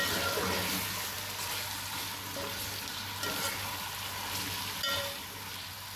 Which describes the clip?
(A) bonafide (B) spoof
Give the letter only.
A